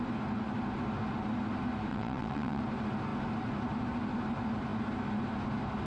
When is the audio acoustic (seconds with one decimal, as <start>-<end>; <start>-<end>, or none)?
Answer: 0.0-1.9; 2.6-5.9